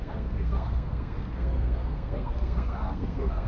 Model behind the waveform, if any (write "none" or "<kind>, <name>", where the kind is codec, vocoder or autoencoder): codec, SNAC